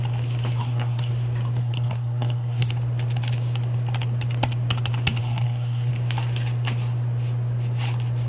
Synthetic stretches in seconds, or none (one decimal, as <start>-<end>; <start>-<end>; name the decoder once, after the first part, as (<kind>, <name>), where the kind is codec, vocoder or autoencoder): 0.6-1.1 (codec, SNAC); 1.6-2.7; 5.2-5.9